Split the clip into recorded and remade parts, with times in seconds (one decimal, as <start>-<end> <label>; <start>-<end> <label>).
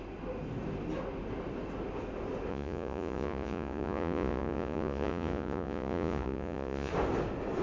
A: 0.0-2.5 recorded; 2.5-6.9 remade; 6.9-7.6 recorded